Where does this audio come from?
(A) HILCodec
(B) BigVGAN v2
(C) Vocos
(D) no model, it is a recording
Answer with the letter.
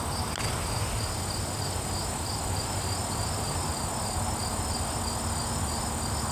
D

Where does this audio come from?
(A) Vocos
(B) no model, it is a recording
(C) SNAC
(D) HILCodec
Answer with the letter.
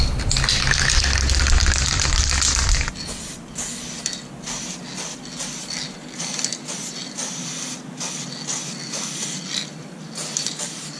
B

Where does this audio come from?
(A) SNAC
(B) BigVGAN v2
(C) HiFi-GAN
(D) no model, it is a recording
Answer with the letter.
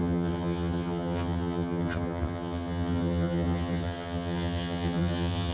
C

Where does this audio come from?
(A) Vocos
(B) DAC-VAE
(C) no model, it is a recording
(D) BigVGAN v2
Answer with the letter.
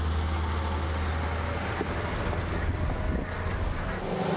C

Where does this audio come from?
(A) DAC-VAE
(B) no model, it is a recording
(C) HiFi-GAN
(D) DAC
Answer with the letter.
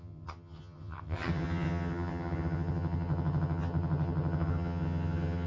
C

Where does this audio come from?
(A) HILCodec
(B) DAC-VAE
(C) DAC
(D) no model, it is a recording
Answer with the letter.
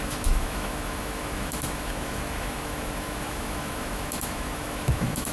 B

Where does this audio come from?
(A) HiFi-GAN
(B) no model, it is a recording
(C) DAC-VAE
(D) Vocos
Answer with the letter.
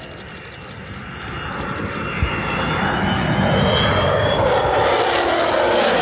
B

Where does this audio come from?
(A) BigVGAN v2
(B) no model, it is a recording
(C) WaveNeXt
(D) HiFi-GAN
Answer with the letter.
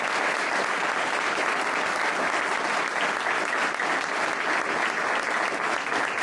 B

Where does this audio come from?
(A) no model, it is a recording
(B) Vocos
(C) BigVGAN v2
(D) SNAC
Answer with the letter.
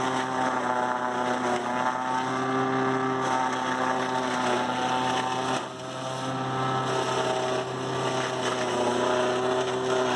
A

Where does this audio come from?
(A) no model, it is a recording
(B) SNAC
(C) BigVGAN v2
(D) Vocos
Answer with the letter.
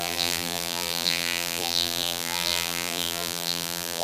C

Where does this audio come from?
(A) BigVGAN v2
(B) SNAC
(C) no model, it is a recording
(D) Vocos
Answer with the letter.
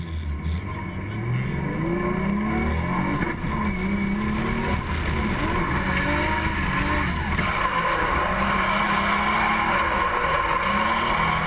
C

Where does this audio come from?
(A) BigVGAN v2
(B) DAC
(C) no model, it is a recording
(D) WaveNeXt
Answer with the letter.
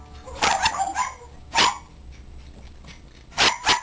C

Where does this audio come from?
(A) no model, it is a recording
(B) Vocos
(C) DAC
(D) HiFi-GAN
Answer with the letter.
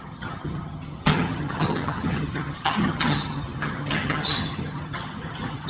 D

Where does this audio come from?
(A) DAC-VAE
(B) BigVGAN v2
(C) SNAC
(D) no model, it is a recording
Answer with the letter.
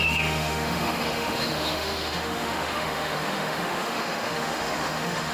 A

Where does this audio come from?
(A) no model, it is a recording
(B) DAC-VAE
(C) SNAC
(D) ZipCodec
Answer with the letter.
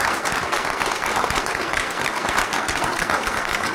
C